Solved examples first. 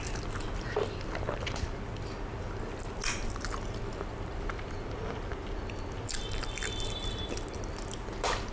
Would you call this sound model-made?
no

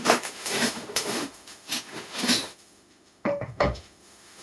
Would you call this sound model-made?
yes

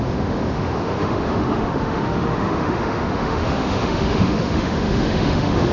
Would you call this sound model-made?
yes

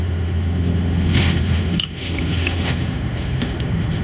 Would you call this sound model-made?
yes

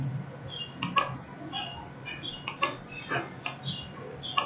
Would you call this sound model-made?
no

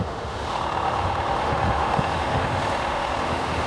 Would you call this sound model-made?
yes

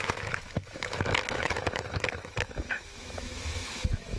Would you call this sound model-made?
yes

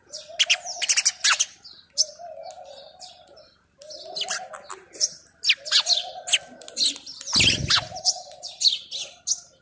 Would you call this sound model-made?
no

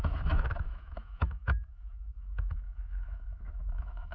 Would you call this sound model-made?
yes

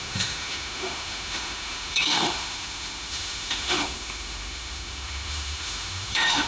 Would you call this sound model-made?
yes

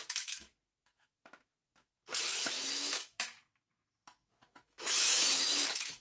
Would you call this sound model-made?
yes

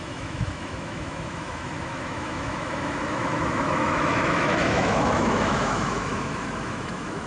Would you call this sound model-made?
yes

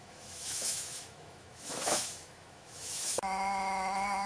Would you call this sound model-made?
yes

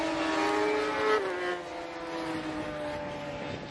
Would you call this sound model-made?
no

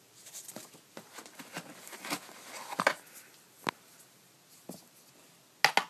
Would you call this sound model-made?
no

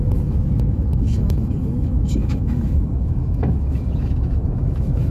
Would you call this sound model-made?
yes